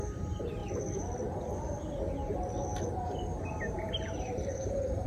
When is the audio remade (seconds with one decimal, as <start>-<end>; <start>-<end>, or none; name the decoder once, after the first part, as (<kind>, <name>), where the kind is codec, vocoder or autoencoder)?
0.0-0.6 (vocoder, BigVGAN v2); 3.7-5.1